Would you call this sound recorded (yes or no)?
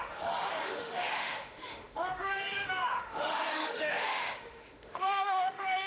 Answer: no